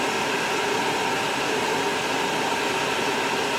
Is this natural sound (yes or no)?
yes